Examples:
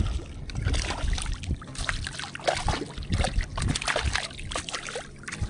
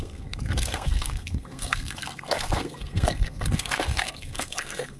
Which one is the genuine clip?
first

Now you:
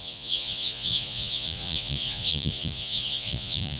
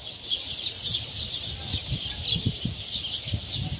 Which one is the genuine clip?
second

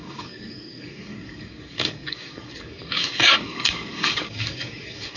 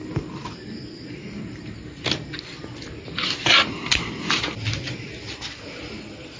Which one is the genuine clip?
second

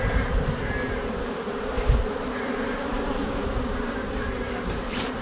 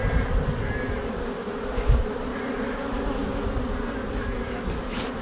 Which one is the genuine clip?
second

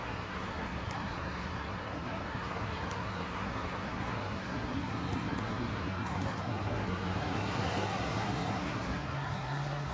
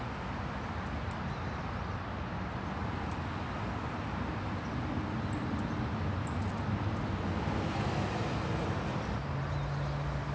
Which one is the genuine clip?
second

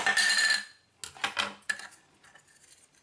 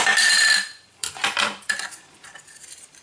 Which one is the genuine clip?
first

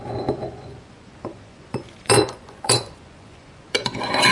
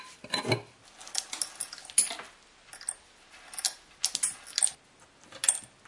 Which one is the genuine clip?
second